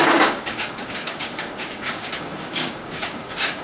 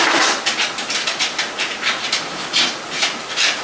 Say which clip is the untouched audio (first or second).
second